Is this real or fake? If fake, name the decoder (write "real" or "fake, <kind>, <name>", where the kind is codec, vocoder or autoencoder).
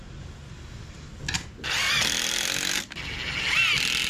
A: real